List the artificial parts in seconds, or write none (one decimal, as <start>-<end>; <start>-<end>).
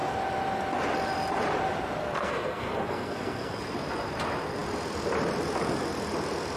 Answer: 2.0-3.6